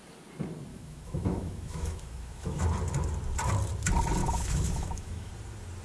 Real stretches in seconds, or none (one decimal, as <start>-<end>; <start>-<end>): 0.0-0.7; 2.6-4.2; 5.3-5.8